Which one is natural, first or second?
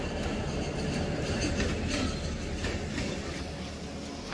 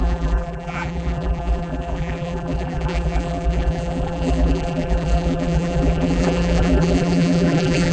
first